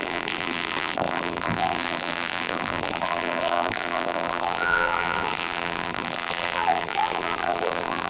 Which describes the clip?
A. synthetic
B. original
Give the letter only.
A